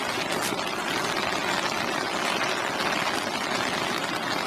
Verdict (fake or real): real